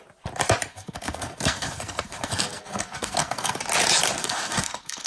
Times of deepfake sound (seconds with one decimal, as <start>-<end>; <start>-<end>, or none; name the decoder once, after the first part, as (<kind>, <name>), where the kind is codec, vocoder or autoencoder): 0.7-3.6 (codec, SNAC); 4.2-5.1